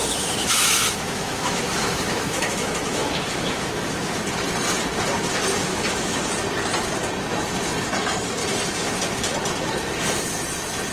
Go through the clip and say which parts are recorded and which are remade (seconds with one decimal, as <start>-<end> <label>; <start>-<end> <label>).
0.0-4.2 remade; 4.2-5.7 recorded; 5.7-6.2 remade; 6.2-10.9 recorded